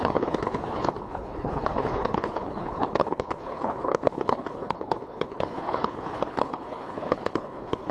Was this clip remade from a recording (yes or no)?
yes